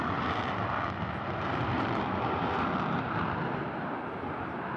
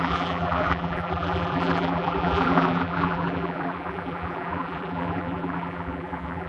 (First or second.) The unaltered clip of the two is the first